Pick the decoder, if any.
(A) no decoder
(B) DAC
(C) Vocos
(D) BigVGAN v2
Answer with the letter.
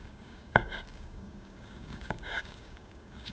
B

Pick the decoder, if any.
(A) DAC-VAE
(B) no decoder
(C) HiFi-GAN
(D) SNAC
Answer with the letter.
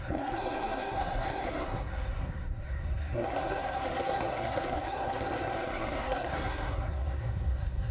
D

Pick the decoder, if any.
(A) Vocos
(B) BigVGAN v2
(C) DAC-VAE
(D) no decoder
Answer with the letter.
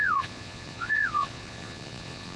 A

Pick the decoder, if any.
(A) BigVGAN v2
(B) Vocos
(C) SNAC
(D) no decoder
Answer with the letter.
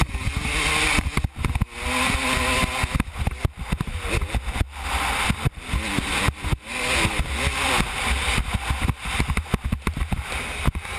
D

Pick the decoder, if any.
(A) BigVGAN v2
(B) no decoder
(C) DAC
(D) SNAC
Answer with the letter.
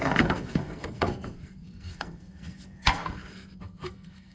D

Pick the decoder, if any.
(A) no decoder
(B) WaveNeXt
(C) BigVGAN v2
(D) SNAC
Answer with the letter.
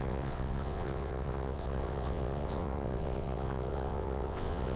B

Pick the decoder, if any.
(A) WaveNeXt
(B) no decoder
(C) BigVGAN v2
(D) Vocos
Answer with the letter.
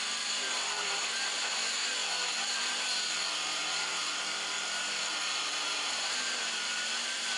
C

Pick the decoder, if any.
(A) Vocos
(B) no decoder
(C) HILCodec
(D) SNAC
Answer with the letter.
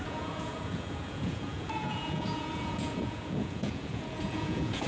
A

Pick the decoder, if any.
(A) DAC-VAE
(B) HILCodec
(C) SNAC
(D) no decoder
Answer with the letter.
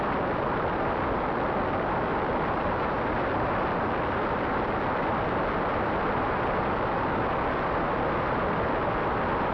D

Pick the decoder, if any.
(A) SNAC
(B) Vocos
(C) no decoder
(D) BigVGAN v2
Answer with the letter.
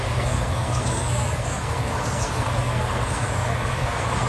A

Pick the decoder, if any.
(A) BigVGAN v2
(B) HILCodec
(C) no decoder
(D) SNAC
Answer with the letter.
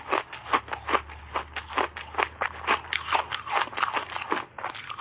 C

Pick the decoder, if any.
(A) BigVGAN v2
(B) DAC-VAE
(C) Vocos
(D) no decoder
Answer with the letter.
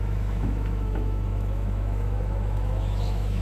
B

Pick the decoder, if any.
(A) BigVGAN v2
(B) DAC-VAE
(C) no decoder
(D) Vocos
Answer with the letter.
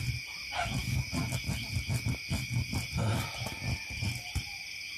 C